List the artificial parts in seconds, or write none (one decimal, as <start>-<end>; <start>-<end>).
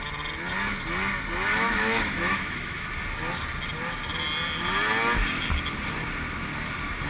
1.5-2.9